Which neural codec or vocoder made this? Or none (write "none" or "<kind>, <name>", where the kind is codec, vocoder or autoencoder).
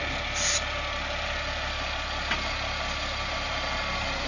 none